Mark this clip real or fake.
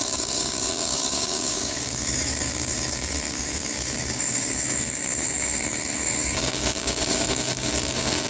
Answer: fake